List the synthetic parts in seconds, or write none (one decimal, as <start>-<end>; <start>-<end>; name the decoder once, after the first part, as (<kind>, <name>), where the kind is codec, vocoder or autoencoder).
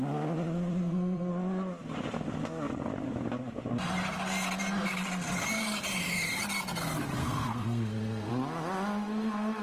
0.8-1.3 (codec, SNAC); 7.2-8.3